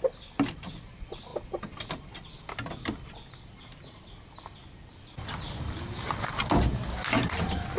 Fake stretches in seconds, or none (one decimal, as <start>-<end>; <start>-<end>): none